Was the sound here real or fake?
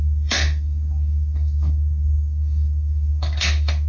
fake